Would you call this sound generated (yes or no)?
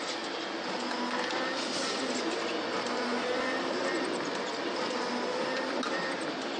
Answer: no